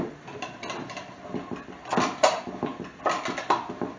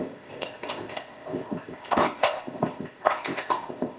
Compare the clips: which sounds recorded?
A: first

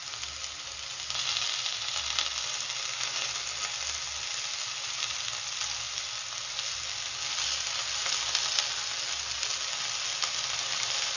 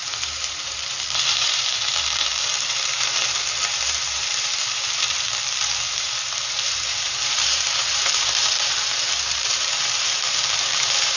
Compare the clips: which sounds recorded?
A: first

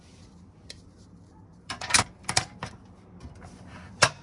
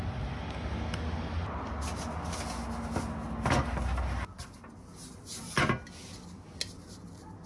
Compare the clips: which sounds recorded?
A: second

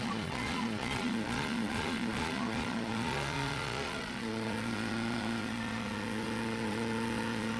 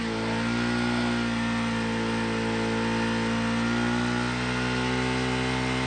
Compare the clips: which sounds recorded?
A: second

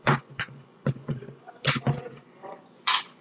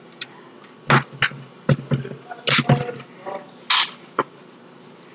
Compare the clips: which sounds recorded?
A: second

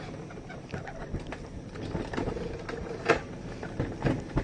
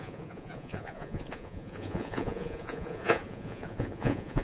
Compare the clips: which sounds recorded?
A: first